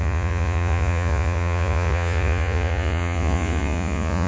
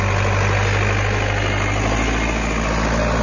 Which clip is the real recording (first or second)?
second